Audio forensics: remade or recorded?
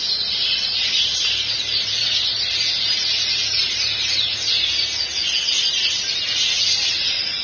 recorded